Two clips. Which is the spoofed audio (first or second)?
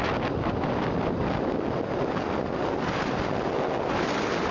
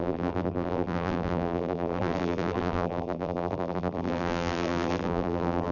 second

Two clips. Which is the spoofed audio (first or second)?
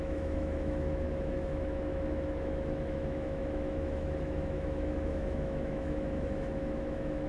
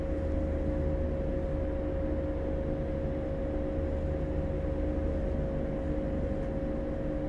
first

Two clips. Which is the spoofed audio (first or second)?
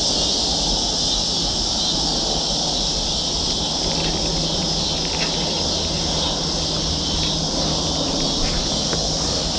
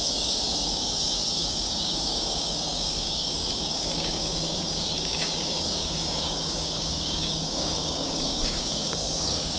second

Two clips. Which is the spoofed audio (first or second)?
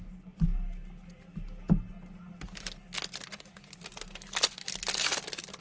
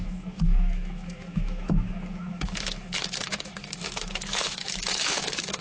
second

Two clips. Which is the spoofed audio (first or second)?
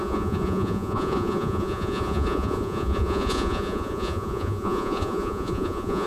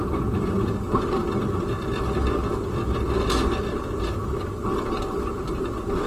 first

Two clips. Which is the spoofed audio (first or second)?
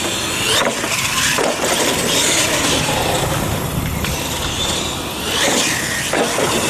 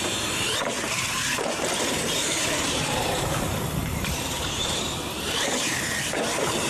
second